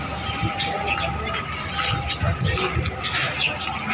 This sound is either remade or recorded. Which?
recorded